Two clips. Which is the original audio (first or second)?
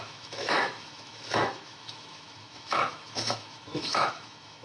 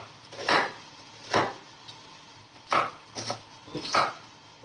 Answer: second